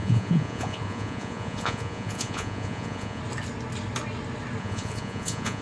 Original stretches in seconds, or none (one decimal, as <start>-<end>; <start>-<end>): 3.2-4.6